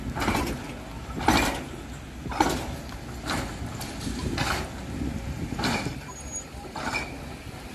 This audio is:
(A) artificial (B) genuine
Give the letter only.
B